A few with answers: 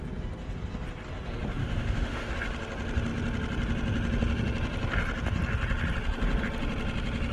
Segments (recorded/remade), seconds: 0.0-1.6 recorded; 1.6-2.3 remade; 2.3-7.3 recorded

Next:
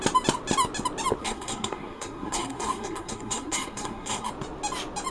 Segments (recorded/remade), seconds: 0.0-1.2 recorded; 1.2-4.3 remade; 4.3-5.1 recorded

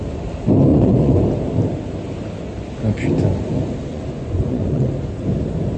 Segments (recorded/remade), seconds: 0.0-0.7 recorded; 0.7-1.2 remade; 1.2-3.9 recorded; 3.9-4.9 remade; 4.9-5.8 recorded

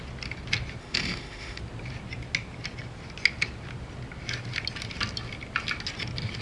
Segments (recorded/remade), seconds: 0.0-0.8 recorded; 0.8-1.6 remade; 1.6-6.4 recorded

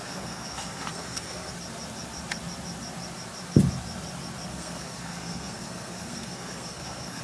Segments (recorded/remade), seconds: 0.0-1.5 remade; 1.5-4.5 recorded; 4.5-7.2 remade

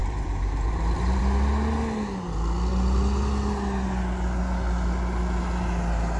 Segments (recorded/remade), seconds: 0.0-1.2 remade; 1.2-6.2 recorded